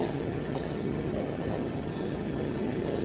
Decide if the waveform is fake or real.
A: fake